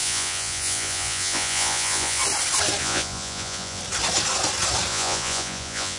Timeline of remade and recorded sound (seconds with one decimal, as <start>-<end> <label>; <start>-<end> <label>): 0.0-2.2 remade; 2.2-2.8 recorded; 2.8-3.8 remade; 3.8-4.9 recorded; 4.9-6.0 remade